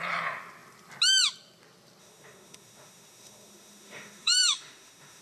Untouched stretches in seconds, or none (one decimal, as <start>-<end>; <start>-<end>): 0.0-2.0